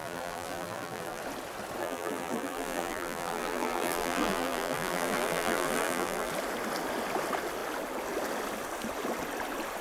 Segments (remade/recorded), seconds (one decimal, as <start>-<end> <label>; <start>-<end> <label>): 0.0-1.2 remade; 1.2-1.8 recorded; 1.8-6.3 remade; 6.3-9.8 recorded